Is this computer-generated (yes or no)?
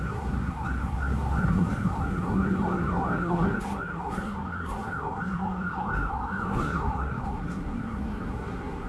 yes